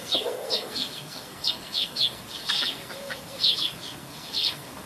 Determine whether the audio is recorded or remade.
remade